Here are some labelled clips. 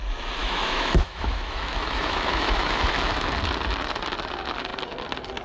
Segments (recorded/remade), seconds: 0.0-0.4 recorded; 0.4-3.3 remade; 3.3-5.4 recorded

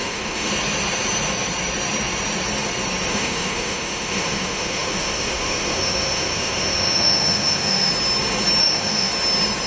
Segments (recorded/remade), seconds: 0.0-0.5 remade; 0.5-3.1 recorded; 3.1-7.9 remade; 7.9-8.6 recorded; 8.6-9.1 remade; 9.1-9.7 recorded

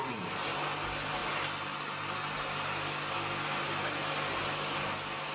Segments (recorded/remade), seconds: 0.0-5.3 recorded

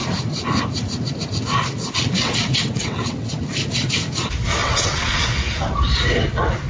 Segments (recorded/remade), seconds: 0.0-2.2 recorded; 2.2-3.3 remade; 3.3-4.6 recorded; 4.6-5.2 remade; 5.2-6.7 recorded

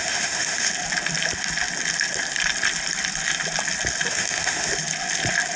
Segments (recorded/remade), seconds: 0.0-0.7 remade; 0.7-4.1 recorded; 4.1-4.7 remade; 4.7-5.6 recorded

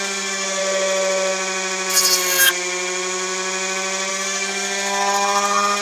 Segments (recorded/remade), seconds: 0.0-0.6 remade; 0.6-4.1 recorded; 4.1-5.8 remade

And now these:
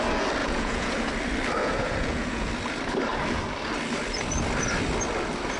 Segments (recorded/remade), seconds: 0.0-0.4 recorded; 0.4-1.1 remade; 1.1-1.6 recorded; 1.6-2.5 remade; 2.5-5.6 recorded

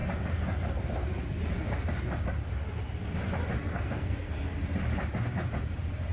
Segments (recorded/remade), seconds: 0.0-3.7 recorded; 3.7-4.3 remade; 4.3-6.1 recorded